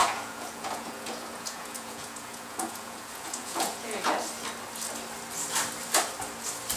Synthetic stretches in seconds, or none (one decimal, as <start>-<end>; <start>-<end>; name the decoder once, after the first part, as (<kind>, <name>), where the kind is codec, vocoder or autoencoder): 0.0-4.1 (vocoder, Vocos)